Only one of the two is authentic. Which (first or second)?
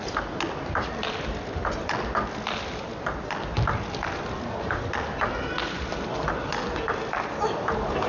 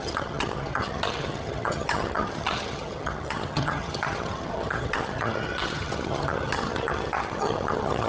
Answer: first